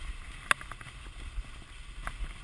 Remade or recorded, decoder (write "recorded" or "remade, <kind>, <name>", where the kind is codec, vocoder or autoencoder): recorded